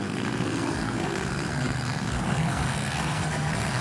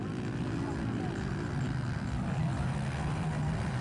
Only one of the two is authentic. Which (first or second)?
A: second